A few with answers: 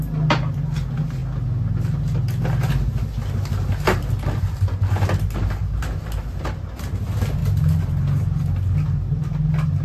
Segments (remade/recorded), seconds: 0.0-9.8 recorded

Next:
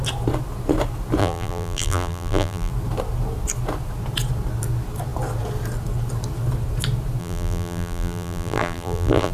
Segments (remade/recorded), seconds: 0.0-1.2 recorded; 1.2-2.7 remade; 2.7-7.2 recorded; 7.2-9.3 remade

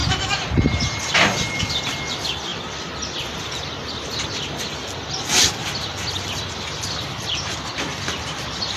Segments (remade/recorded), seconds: 0.0-1.1 remade; 1.1-7.9 recorded; 7.9-8.8 remade

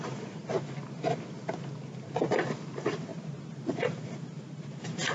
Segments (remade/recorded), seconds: 0.0-0.4 remade; 0.4-2.3 recorded; 2.3-3.1 remade; 3.1-3.7 recorded; 3.7-5.1 remade

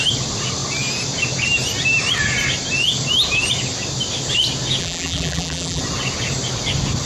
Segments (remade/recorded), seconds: 0.0-4.8 recorded; 4.8-5.8 remade; 5.8-7.1 recorded

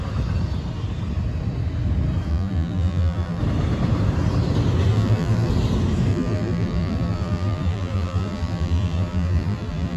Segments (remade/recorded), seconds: 0.0-2.3 recorded; 2.3-3.4 remade; 3.4-4.9 recorded; 4.9-5.5 remade; 5.5-6.1 recorded; 6.1-10.0 remade

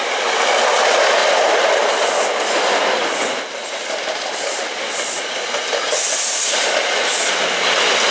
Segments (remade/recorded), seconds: 0.0-1.2 recorded; 1.2-1.9 remade; 1.9-3.6 recorded; 3.6-7.4 remade; 7.4-8.1 recorded

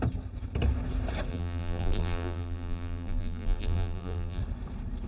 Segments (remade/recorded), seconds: 0.0-1.3 recorded; 1.3-4.4 remade; 4.4-5.1 recorded